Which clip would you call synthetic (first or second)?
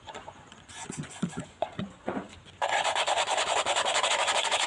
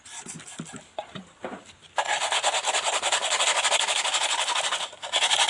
first